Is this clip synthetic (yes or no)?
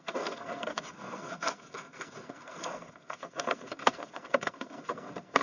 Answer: yes